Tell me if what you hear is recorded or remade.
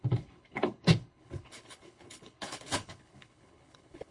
remade